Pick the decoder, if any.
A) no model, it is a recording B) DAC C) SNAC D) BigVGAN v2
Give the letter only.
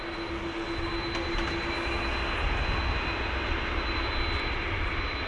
A